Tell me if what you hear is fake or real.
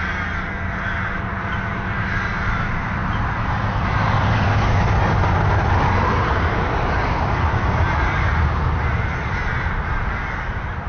real